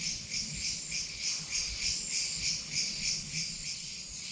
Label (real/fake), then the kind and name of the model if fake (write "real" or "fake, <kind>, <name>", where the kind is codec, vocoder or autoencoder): real